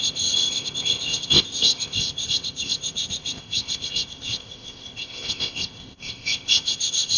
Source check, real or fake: fake